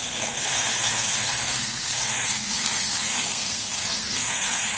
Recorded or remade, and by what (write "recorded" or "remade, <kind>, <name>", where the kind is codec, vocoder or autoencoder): remade, codec, SNAC